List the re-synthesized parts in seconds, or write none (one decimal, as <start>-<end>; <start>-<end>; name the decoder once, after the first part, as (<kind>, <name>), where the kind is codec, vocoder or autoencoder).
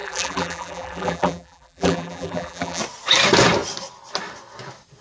0.0-2.8 (vocoder, BigVGAN v2)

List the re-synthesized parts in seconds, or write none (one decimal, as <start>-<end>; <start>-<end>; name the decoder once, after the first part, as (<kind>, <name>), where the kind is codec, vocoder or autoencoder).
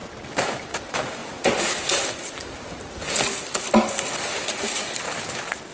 none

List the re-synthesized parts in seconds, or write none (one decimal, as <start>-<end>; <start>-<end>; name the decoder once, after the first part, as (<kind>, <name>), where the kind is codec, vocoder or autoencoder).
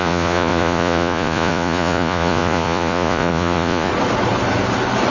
0.0-3.9 (vocoder, Vocos)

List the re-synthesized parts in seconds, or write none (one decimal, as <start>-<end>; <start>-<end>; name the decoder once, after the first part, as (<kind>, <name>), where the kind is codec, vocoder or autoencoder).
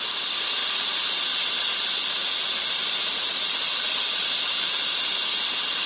0.6-1.1 (vocoder, BigVGAN v2); 2.8-5.2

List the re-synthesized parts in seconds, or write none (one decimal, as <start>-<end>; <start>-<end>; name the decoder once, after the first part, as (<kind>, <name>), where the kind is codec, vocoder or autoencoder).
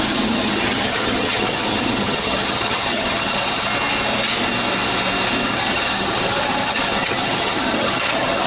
0.0-3.7 (vocoder, HiFi-GAN); 5.5-8.5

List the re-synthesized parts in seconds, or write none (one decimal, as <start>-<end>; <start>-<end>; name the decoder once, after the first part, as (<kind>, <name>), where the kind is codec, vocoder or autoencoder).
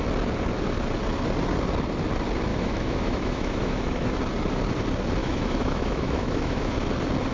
2.5-4.2 (autoencoder, DAC-VAE); 5.2-6.7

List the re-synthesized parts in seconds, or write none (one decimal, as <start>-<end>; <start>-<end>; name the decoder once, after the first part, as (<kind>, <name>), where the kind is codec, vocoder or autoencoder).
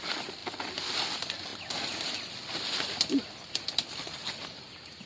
none